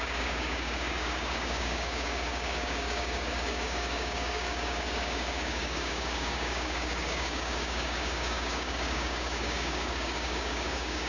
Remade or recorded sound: remade